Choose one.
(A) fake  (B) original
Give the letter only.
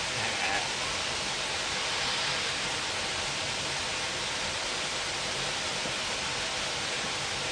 B